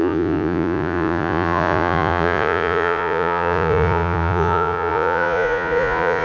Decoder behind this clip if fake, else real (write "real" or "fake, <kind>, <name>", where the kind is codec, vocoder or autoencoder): fake, vocoder, Vocos